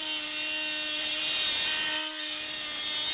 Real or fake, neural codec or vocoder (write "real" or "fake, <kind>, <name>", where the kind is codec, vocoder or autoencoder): real